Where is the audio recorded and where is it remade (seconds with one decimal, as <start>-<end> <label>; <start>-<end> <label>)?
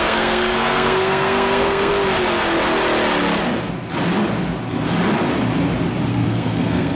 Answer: 0.0-1.9 remade; 1.9-6.1 recorded; 6.1-7.0 remade